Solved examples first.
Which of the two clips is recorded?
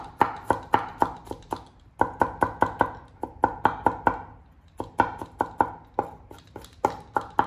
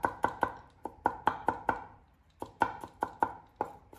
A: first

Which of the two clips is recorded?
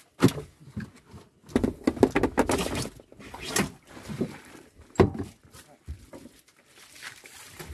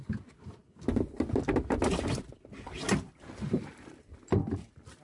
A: first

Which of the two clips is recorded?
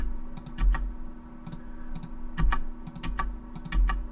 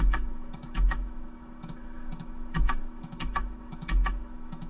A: first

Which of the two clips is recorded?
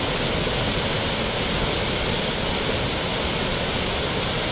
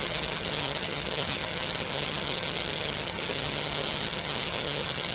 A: first